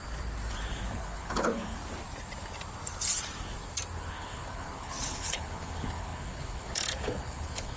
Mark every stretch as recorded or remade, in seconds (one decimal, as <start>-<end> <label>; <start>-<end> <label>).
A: 0.0-0.7 recorded; 0.7-1.8 remade; 1.8-4.1 recorded; 4.1-7.8 remade